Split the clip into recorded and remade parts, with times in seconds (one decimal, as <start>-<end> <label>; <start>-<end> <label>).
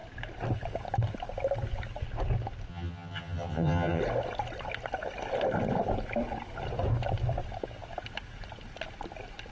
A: 0.0-2.7 recorded; 2.7-4.0 remade; 4.0-9.5 recorded